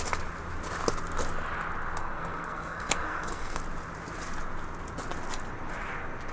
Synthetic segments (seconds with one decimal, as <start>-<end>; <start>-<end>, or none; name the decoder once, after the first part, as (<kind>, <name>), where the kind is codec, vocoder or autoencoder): 2.0-3.6 (codec, SNAC)